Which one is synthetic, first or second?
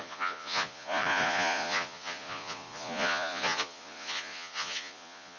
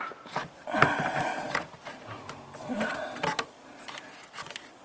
first